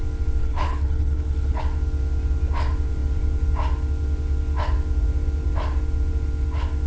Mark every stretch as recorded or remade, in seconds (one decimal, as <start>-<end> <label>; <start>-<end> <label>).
0.0-0.4 recorded; 0.4-1.6 remade; 1.6-6.9 recorded